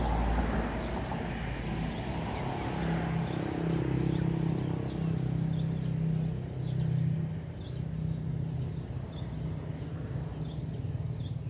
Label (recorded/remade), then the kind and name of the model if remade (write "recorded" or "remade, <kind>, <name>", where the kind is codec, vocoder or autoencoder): recorded